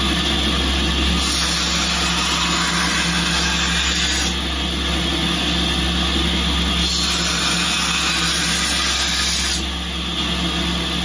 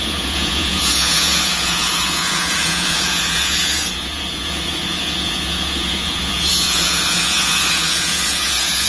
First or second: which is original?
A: first